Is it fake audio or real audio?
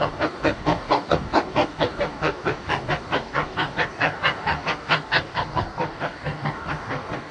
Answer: fake